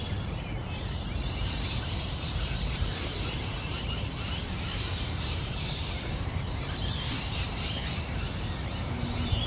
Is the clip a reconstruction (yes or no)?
yes